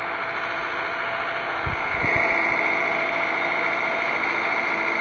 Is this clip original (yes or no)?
no